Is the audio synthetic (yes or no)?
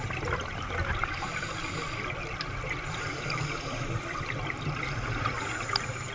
no